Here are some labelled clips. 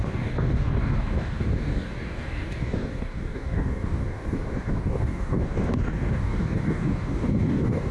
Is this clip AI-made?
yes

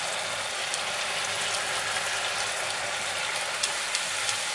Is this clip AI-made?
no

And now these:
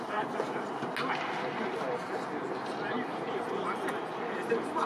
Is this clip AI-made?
no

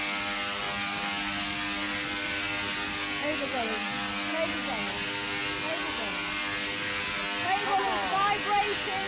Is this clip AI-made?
no